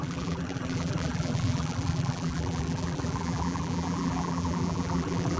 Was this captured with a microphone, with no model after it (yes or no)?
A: no